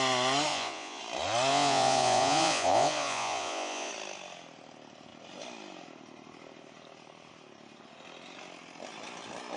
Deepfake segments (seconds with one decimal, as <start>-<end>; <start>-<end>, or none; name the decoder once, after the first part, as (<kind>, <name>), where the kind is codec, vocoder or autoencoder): 0.5-1.0 (vocoder, Vocos); 1.5-3.9